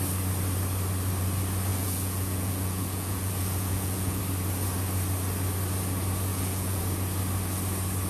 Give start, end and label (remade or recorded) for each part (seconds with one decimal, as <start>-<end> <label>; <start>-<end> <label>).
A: 0.0-1.7 recorded; 1.7-4.2 remade; 4.2-6.3 recorded; 6.3-6.8 remade; 6.8-8.1 recorded